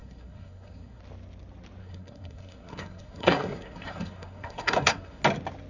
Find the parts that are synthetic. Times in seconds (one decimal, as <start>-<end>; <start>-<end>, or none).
0.0-1.0; 1.8-5.2